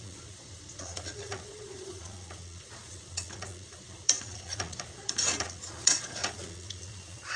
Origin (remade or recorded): remade